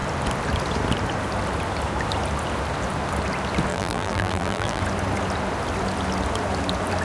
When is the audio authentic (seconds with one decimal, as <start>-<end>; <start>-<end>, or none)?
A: 0.0-3.7; 4.8-7.0